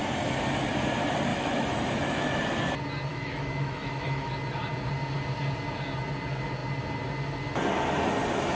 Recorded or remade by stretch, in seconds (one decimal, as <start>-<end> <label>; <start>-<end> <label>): 0.0-1.3 recorded; 1.3-2.4 remade; 2.4-3.1 recorded; 3.1-4.3 remade; 4.3-8.6 recorded